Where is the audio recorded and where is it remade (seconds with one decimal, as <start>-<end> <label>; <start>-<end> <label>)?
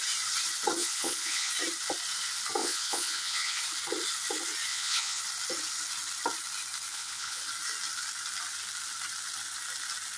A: 0.0-0.8 recorded; 0.8-1.5 remade; 1.5-2.6 recorded; 2.6-3.6 remade; 3.6-4.7 recorded; 4.7-5.2 remade; 5.2-6.9 recorded; 6.9-7.4 remade; 7.4-10.2 recorded